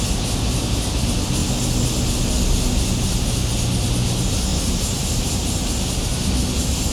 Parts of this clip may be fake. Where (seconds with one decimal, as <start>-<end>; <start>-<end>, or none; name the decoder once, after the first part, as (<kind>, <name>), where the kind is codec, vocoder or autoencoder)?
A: 4.5-6.1 (vocoder, BigVGAN v2)